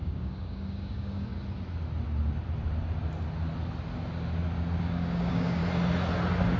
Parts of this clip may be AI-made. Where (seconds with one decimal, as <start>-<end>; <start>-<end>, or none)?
0.0-1.3; 4.8-5.6